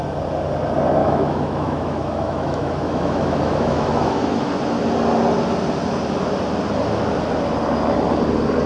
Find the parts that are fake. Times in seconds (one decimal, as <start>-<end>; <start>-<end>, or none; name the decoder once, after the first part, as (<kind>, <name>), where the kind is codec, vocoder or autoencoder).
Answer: 1.0-4.4 (autoencoder, DAC-VAE)